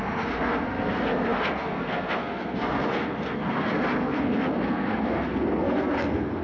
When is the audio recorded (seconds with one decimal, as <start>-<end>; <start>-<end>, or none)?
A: none

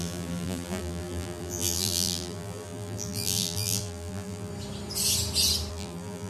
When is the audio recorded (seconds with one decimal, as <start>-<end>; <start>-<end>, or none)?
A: 4.5-5.7

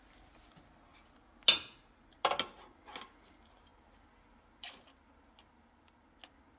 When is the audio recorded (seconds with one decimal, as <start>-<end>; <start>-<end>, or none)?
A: 0.0-6.6

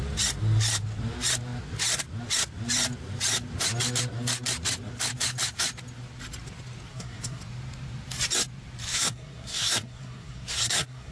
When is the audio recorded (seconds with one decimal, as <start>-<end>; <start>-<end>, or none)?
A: 0.0-6.9; 7.4-8.9

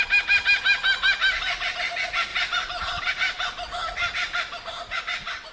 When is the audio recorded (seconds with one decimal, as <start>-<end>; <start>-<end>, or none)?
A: 0.0-5.5

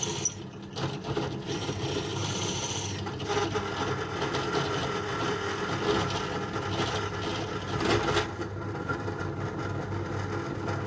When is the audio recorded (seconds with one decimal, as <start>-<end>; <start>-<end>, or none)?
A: 0.0-0.7; 3.2-7.3; 9.6-10.9

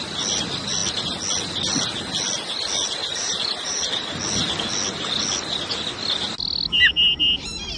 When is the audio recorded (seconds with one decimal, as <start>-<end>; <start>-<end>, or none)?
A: 0.0-3.0; 4.0-7.8

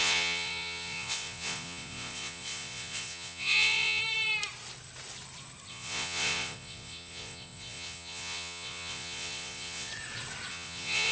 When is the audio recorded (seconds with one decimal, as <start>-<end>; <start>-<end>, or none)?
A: 4.0-5.7; 9.9-10.5